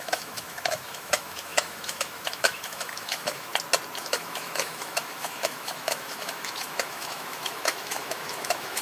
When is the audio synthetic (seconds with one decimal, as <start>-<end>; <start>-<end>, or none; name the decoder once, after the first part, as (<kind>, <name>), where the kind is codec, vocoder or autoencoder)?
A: 0.0-3.5 (autoencoder, DAC-VAE); 4.0-8.8